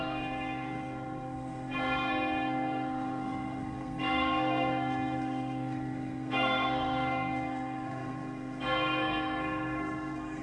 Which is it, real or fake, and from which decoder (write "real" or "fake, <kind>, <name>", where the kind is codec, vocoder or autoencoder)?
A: fake, codec, SNAC